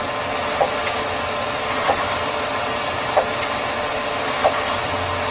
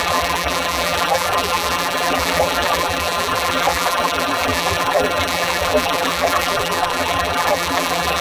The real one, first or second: first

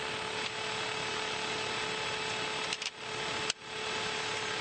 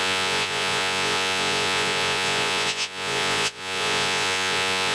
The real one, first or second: first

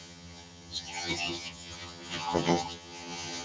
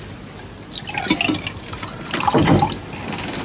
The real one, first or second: second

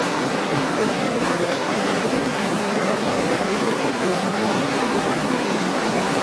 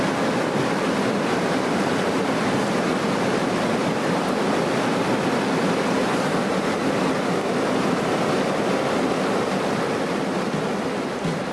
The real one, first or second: second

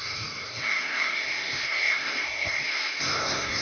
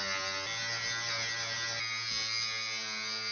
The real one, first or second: second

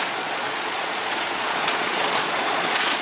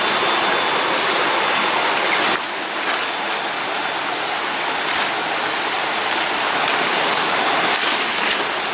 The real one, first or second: second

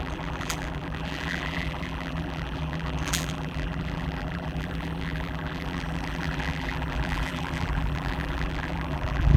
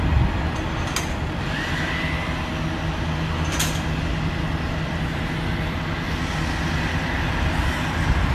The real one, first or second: second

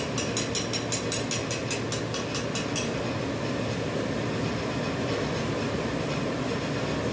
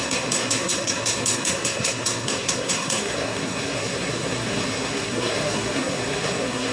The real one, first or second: first